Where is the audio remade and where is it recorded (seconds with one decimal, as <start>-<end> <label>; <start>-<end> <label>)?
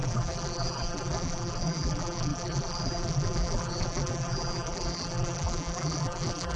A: 0.0-6.6 remade